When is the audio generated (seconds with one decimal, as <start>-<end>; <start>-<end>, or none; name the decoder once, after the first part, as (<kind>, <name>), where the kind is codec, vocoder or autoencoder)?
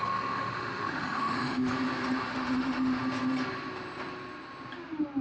0.0-1.7 (autoencoder, DAC-VAE); 2.3-3.0